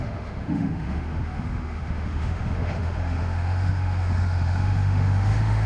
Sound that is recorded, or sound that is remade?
remade